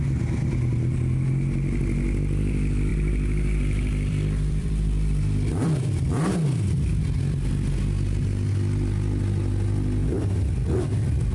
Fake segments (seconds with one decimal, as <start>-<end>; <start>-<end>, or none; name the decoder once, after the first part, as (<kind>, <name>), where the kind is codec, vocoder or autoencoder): 2.9-6.0 (vocoder, BigVGAN v2); 10.0-10.9